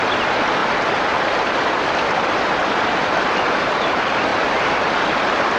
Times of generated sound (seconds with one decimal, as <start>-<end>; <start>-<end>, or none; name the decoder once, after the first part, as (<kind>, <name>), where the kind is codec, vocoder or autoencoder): 0.6-3.9 (vocoder, BigVGAN v2)